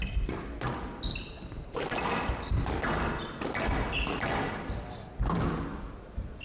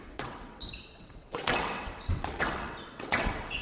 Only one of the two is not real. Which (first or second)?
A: second